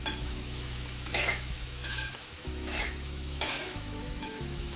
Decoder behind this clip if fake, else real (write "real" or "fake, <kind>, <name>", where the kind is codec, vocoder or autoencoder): fake, autoencoder, DAC-VAE